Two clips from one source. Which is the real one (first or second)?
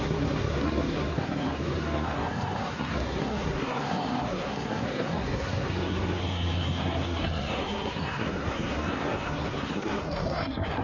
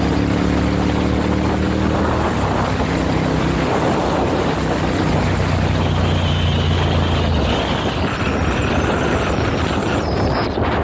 second